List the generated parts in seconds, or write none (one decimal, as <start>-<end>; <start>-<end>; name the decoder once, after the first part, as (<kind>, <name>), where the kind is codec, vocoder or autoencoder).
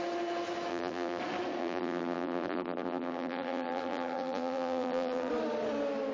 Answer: 0.7-1.2 (vocoder, BigVGAN v2); 1.6-5.3